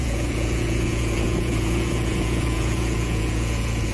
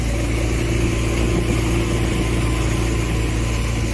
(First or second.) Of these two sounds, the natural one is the second